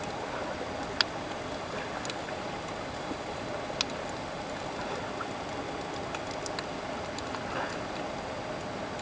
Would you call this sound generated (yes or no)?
no